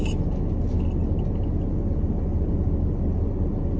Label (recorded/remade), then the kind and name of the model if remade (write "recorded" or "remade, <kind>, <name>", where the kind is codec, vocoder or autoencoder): recorded